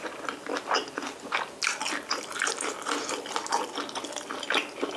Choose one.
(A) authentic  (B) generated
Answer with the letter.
A